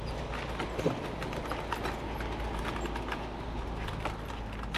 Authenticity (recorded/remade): recorded